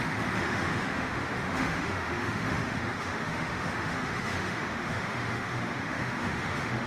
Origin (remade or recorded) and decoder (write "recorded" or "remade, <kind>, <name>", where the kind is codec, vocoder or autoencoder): remade, autoencoder, DAC-VAE